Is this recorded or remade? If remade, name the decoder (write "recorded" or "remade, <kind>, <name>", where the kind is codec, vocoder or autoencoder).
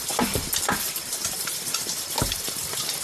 remade, vocoder, BigVGAN v2